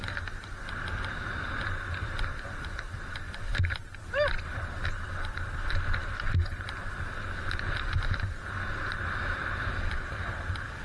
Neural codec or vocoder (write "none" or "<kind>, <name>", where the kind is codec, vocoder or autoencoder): none